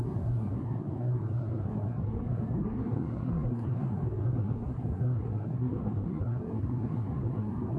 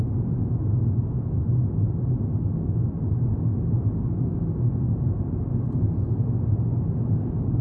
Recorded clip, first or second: second